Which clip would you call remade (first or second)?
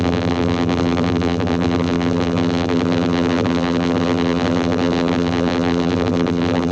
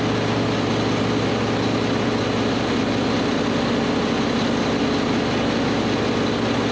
first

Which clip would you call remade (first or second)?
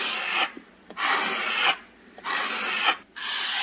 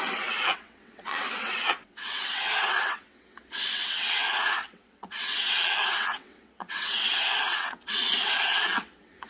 second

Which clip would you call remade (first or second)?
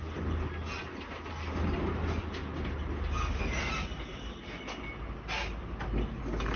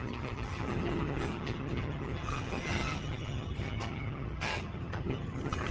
second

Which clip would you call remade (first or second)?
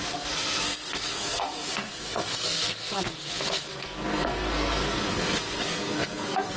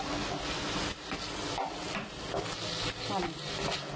first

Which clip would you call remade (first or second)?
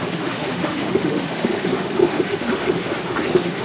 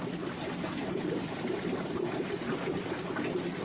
first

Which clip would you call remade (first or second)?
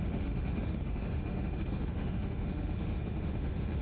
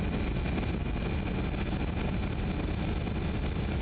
first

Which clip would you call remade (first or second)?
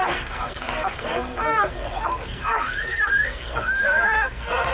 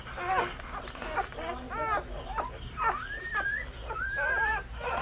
first